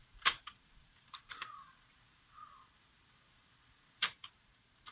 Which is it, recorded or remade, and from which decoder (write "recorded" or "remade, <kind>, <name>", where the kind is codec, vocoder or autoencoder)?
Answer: remade, vocoder, BigVGAN v2